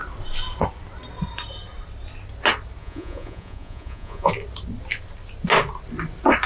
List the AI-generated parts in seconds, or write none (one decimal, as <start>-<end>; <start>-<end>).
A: 2.8-4.3